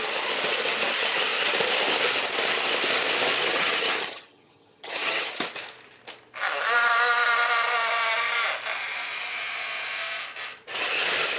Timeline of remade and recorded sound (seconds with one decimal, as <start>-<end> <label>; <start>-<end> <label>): 0.0-3.5 recorded; 3.5-5.4 remade; 5.4-11.4 recorded